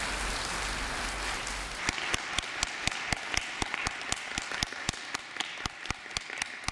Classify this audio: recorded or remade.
recorded